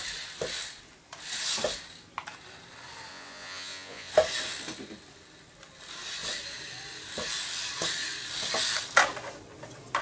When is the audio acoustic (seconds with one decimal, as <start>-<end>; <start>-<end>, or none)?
0.0-3.1; 4.1-10.0